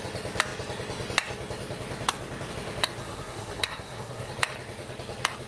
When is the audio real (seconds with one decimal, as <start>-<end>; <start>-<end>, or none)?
0.0-3.0; 4.3-5.5